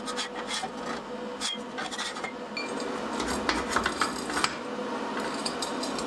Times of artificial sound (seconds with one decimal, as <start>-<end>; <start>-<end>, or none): none